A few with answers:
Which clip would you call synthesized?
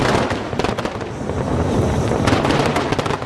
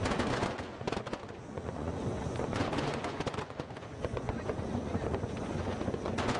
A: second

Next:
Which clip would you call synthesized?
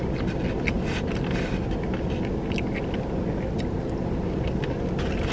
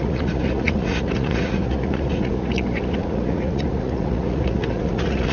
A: second